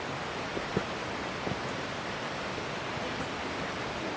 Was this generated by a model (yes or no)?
no